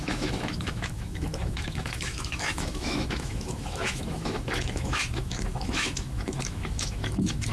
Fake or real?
fake